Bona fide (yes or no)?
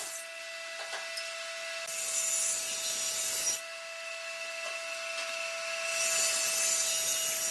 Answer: yes